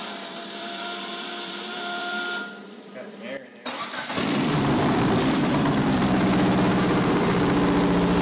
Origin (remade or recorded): remade